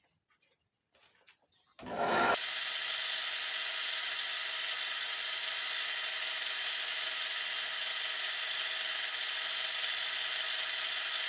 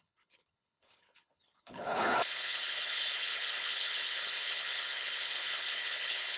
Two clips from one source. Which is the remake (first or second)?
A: second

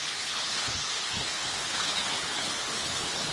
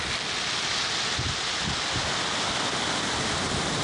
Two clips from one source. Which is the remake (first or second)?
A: first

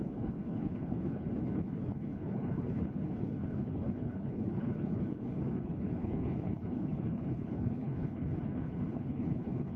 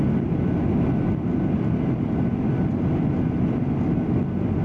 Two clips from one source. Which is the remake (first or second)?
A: first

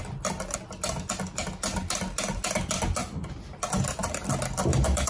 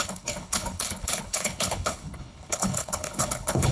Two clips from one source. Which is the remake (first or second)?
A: second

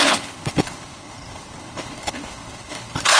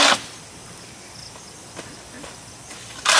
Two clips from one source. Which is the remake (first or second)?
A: first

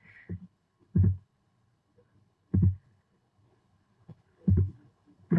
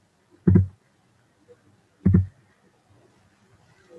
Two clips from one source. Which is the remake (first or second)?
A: first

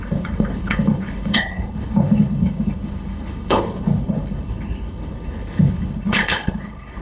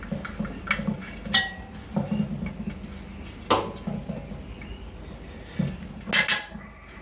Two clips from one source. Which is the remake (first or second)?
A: first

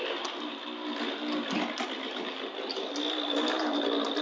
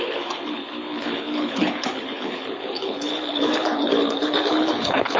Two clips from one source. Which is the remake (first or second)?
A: second